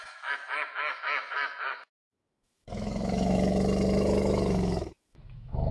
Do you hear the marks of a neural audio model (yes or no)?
yes